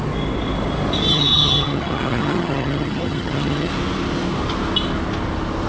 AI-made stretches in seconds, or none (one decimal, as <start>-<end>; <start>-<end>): 1.1-3.7